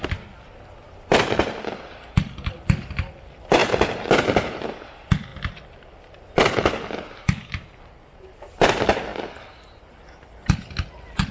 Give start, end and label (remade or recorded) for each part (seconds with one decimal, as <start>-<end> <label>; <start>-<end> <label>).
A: 0.0-11.3 recorded

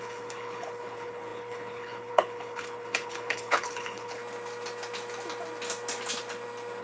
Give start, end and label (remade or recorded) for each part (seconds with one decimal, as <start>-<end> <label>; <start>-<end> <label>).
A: 0.0-4.2 remade; 4.2-6.8 recorded

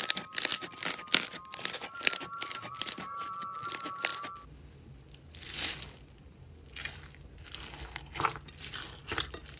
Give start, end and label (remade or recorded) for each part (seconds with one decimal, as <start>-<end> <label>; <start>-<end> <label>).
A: 0.0-0.5 remade; 0.5-1.0 recorded; 1.0-4.1 remade; 4.1-8.0 recorded; 8.0-9.6 remade

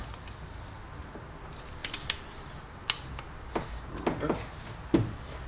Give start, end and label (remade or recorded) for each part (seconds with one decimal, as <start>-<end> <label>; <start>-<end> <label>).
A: 0.0-5.5 recorded

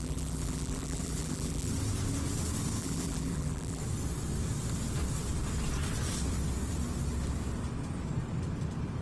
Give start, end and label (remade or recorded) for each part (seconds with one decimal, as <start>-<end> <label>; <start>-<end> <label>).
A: 0.0-1.7 remade; 1.7-2.8 recorded; 2.8-3.8 remade; 3.8-9.0 recorded

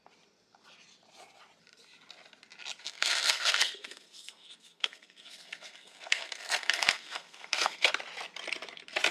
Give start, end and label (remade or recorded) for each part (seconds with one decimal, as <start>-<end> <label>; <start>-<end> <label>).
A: 0.0-2.8 recorded; 2.8-7.9 remade; 7.9-9.1 recorded